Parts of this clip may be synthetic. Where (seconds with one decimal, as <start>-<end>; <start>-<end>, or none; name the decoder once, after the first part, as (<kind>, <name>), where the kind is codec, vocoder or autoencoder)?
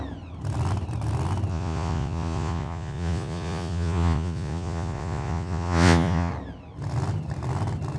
1.5-6.3 (vocoder, Vocos)